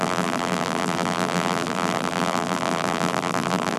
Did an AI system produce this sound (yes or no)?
yes